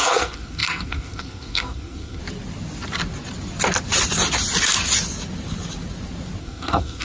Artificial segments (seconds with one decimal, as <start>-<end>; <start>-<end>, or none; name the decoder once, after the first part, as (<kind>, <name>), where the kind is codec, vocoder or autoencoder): 0.0-2.2 (codec, SNAC); 6.4-7.0